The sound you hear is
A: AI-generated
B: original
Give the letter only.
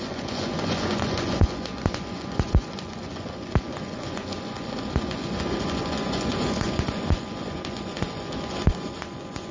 A